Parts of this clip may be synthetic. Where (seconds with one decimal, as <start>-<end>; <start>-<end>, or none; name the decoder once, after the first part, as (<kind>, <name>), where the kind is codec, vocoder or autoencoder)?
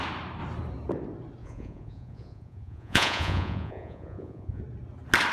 1.4-4.6 (vocoder, Vocos)